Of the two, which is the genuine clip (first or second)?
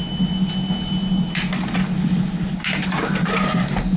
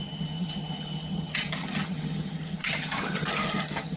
first